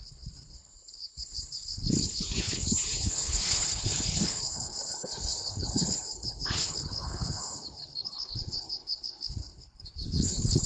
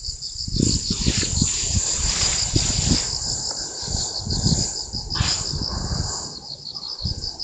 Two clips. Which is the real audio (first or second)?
second